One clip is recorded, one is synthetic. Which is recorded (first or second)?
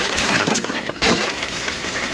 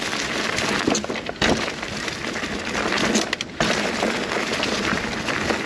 second